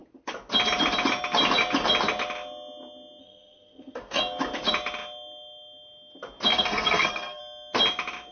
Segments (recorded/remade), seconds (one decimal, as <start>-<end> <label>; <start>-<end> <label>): 0.0-3.2 recorded; 3.2-4.2 remade; 4.2-6.5 recorded; 6.5-7.4 remade; 7.4-8.3 recorded